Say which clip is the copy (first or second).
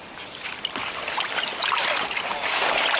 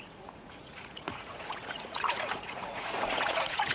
second